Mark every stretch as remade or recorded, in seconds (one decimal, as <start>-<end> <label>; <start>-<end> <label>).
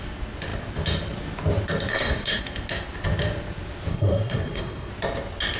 0.0-1.9 recorded; 1.9-2.4 remade; 2.4-3.9 recorded; 3.9-4.9 remade; 4.9-5.6 recorded